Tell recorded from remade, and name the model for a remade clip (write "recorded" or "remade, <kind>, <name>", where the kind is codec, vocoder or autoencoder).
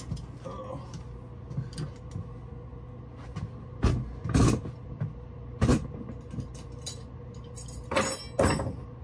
recorded